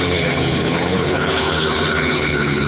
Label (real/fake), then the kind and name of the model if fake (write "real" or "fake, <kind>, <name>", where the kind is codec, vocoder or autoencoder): fake, codec, HILCodec